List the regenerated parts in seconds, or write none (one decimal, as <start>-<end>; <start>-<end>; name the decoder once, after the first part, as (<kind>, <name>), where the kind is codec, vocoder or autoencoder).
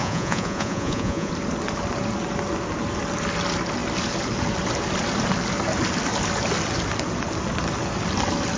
0.0-1.3 (vocoder, Vocos)